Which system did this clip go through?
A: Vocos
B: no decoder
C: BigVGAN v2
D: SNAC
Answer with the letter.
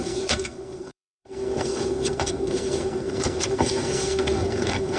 D